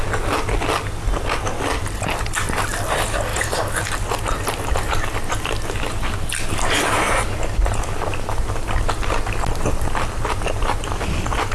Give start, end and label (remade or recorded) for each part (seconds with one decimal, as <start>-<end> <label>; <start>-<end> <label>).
0.0-11.5 recorded